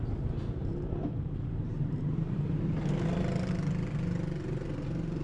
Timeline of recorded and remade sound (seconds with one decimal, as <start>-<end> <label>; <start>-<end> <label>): 0.0-0.6 recorded; 0.6-2.7 remade; 2.7-5.2 recorded

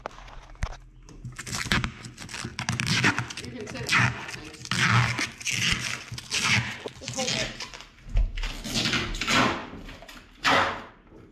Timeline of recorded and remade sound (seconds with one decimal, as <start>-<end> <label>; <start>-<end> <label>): 0.0-7.4 recorded; 7.4-8.2 remade; 8.2-11.3 recorded

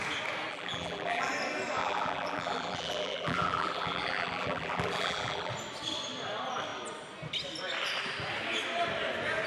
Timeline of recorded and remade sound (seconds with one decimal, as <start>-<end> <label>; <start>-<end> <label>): 0.0-0.5 recorded; 0.5-1.3 remade; 1.3-1.8 recorded; 1.8-5.5 remade; 5.5-9.5 recorded

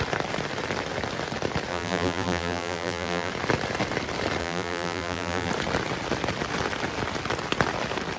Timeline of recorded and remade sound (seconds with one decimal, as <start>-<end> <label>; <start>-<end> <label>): 0.0-1.7 recorded; 1.7-3.3 remade; 3.3-4.4 recorded; 4.4-5.5 remade; 5.5-8.2 recorded

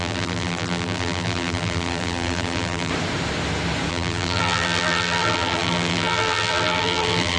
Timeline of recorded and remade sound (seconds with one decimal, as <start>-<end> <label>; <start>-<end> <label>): 0.0-2.9 remade; 2.9-3.9 recorded; 3.9-7.4 remade